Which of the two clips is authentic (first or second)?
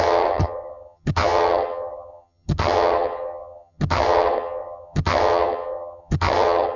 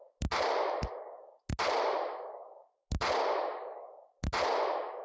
second